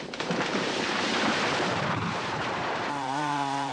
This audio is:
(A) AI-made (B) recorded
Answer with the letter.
A